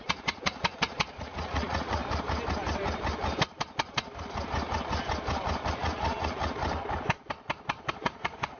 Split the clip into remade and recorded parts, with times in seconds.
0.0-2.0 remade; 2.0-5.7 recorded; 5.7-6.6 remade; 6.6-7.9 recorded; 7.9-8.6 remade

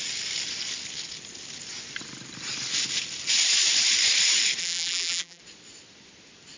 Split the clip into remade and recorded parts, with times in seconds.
0.0-4.6 recorded; 4.6-5.4 remade; 5.4-6.6 recorded

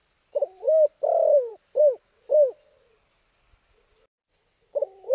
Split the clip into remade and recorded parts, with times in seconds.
0.0-5.1 recorded